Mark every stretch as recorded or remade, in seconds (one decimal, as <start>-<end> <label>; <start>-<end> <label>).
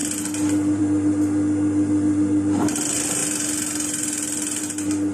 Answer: 0.0-5.1 recorded